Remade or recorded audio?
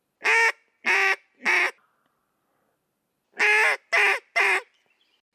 recorded